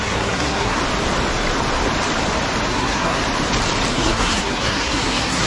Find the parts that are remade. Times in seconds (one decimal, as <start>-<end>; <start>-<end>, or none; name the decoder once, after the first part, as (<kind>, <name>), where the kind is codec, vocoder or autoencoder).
0.0-0.8 (codec, SNAC); 2.7-3.2; 3.9-5.5